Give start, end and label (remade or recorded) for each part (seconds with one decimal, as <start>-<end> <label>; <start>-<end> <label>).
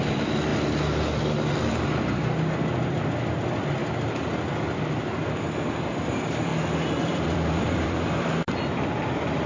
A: 0.0-0.5 remade; 0.5-1.5 recorded; 1.5-2.2 remade; 2.2-3.0 recorded; 3.0-3.8 remade; 3.8-5.7 recorded; 5.7-6.5 remade; 6.5-7.0 recorded; 7.0-9.5 remade